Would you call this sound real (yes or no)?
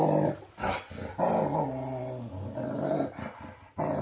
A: yes